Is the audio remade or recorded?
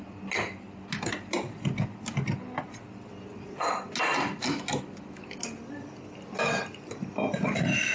recorded